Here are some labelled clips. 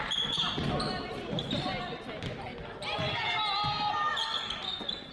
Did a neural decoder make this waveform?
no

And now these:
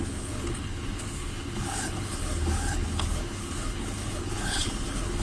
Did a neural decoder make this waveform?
yes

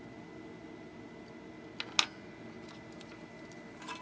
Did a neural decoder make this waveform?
no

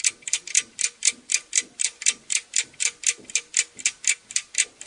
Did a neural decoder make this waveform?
no